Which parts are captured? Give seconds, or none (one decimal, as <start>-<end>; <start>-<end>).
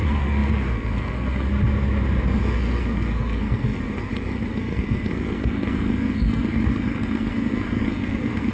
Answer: 1.5-2.4